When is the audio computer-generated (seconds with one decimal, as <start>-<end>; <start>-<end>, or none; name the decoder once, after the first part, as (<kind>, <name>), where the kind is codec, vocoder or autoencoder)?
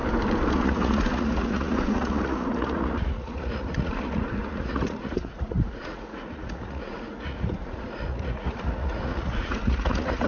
0.5-10.3 (vocoder, Vocos)